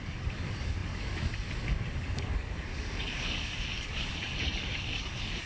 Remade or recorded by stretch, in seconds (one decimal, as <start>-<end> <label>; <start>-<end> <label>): 0.0-5.5 remade